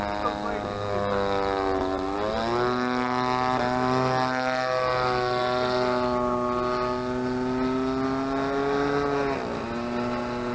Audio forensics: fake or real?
real